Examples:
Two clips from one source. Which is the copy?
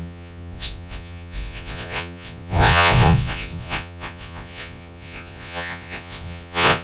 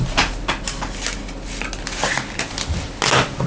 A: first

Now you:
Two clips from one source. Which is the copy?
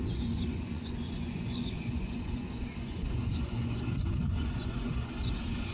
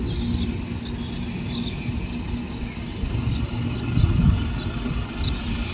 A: first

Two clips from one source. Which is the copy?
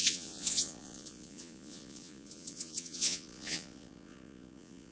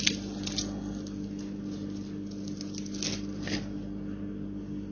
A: first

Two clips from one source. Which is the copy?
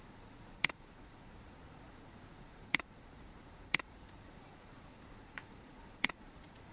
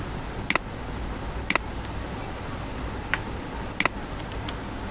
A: first